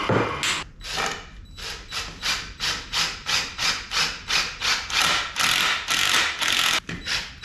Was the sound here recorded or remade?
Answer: recorded